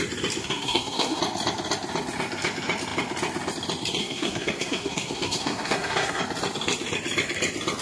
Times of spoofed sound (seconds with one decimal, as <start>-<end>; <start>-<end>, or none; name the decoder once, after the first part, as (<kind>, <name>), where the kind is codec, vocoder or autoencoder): 0.4-1.2 (codec, SNAC); 4.0-6.2